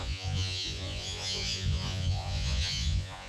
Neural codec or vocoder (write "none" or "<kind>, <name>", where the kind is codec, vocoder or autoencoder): vocoder, Vocos